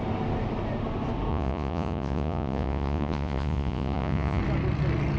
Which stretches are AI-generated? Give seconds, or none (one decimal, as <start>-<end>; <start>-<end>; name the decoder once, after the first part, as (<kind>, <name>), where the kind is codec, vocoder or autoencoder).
1.3-4.4 (vocoder, Vocos)